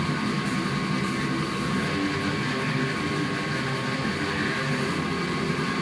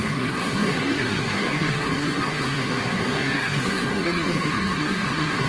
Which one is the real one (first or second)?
first